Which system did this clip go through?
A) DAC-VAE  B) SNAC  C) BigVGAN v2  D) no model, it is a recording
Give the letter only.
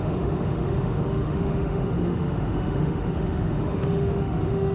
A